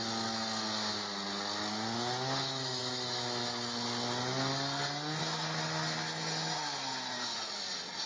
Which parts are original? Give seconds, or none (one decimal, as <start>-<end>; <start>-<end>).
0.0-8.1